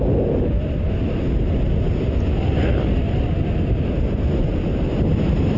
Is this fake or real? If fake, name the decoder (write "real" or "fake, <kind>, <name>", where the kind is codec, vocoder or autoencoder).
real